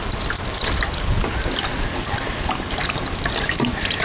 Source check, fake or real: real